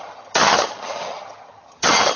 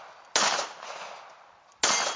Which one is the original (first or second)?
second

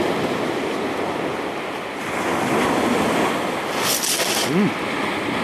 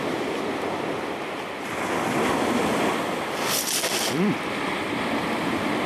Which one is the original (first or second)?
first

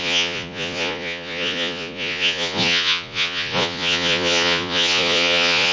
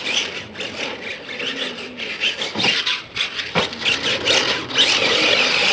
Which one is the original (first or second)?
second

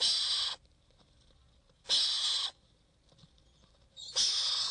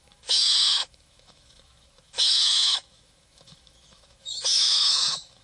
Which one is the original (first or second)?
first